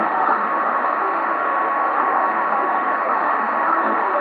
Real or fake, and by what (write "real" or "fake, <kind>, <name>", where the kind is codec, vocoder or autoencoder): fake, autoencoder, DAC-VAE